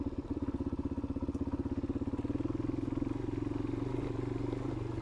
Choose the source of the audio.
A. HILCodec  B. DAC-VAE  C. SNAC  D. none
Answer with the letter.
D